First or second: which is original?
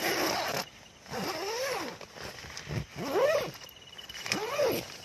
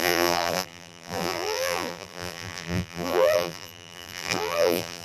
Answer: first